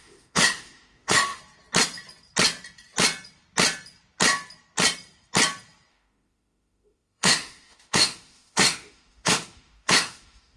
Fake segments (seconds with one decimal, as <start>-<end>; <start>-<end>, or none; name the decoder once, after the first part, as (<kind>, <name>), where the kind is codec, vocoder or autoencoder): 0.0-1.4 (autoencoder, DAC-VAE); 5.9-10.6